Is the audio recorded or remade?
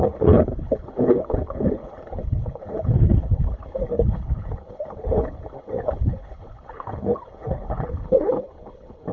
remade